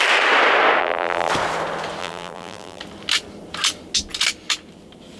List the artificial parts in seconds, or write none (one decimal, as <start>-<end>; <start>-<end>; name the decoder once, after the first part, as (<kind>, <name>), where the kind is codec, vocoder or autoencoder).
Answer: 0.8-1.3 (vocoder, BigVGAN v2); 2.0-2.8